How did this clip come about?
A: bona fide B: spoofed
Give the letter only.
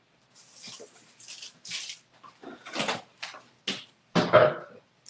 A